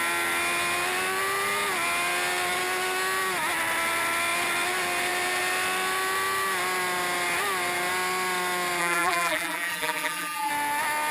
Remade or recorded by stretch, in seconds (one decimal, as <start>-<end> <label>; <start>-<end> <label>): 0.0-8.8 recorded; 8.8-10.5 remade; 10.5-11.1 recorded